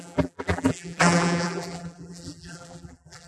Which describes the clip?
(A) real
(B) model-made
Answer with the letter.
B